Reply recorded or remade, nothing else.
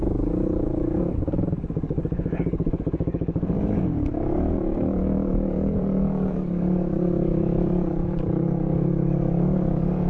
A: remade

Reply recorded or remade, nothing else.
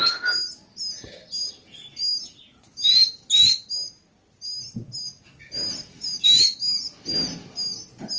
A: recorded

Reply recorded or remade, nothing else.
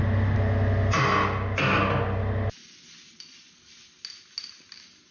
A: recorded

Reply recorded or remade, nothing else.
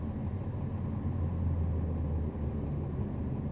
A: recorded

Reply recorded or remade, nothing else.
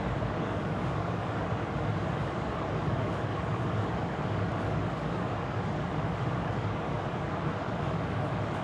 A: remade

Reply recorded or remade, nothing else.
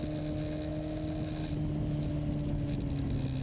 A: recorded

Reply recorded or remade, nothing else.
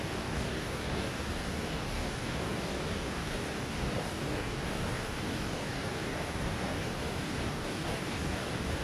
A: remade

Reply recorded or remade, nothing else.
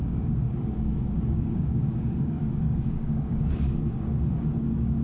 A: remade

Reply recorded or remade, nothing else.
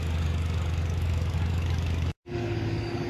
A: remade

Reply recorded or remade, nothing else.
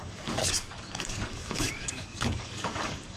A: remade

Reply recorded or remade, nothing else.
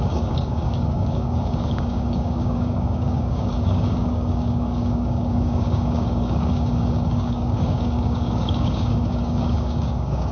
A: remade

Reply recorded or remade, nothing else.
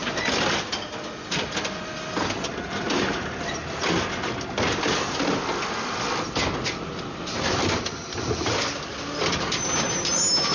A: recorded